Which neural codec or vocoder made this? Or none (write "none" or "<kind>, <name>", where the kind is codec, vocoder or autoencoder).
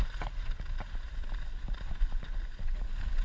none